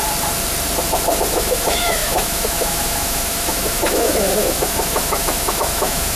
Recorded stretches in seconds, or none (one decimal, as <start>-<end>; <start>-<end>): 0.0-1.3